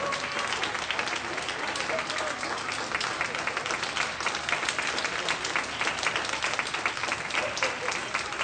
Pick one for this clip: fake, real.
real